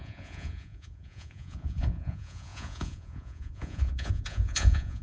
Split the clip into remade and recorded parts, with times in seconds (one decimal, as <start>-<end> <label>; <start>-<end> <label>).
0.0-5.0 remade